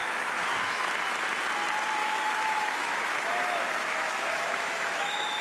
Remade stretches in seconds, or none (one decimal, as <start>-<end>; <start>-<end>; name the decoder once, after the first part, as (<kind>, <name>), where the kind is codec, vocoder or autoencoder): 0.0-0.9 (autoencoder, DAC-VAE); 2.0-5.4